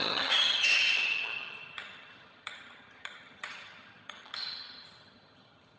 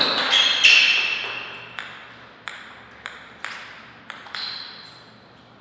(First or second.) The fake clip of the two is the first